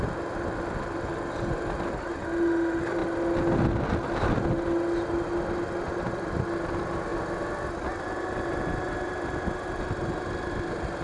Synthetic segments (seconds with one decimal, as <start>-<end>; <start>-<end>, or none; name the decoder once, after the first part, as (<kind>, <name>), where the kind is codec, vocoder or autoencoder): none